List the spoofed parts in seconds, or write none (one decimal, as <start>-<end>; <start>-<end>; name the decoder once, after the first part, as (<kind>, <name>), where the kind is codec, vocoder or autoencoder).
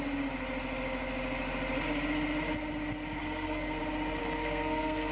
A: 3.2-3.8 (codec, SNAC); 4.2-5.1